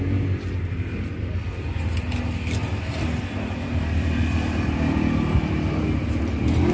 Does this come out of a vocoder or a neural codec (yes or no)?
no